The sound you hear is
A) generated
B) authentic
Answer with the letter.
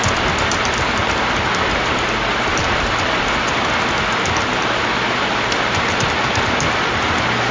B